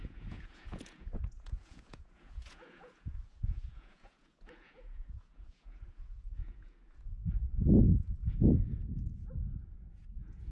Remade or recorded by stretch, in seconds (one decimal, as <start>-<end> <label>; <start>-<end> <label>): 0.0-7.2 remade; 7.2-7.8 recorded; 7.8-10.5 remade